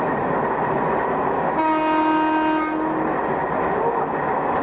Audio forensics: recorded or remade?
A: recorded